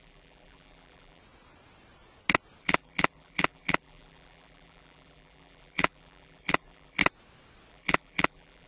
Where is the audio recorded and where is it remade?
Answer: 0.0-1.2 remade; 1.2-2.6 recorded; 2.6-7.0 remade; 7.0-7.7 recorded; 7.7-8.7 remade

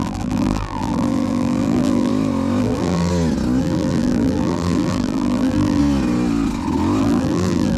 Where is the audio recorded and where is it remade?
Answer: 0.0-2.1 remade; 2.1-2.6 recorded; 2.6-3.1 remade; 3.1-3.6 recorded; 3.6-5.8 remade; 5.8-7.0 recorded; 7.0-7.8 remade

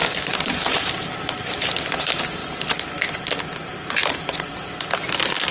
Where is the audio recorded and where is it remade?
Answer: 0.0-5.5 recorded

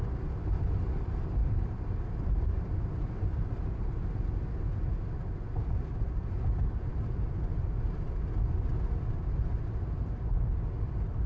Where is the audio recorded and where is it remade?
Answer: 0.0-11.3 recorded

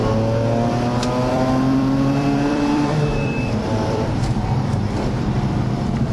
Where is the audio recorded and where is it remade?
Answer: 0.0-1.3 recorded; 1.3-6.1 remade

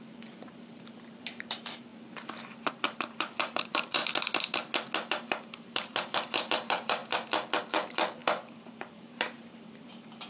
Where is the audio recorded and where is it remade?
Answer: 0.0-1.9 remade; 1.9-2.7 recorded; 2.7-4.0 remade; 4.0-5.1 recorded; 5.1-7.0 remade; 7.0-7.6 recorded; 7.6-10.3 remade

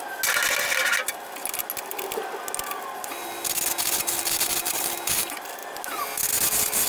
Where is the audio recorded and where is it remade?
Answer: 0.0-6.9 recorded